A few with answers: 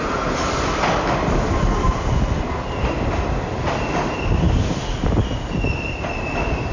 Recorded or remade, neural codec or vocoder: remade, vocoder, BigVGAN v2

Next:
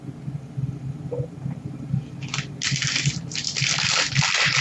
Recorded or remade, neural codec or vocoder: recorded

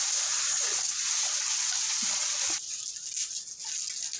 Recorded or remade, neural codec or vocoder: recorded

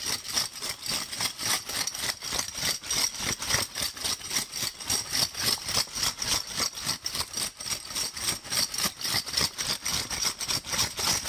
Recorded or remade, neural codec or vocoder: recorded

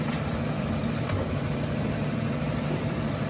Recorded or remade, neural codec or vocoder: remade, vocoder, BigVGAN v2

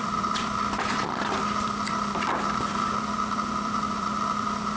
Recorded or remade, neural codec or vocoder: remade, vocoder, BigVGAN v2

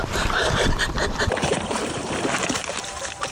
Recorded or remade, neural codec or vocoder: remade, vocoder, BigVGAN v2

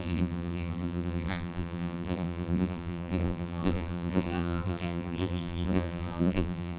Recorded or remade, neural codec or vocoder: remade, vocoder, BigVGAN v2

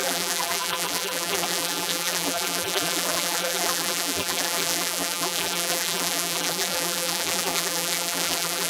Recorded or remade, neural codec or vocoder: remade, vocoder, BigVGAN v2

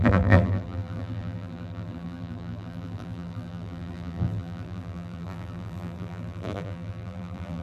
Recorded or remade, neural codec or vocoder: remade, vocoder, BigVGAN v2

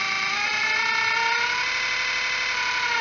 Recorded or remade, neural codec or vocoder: recorded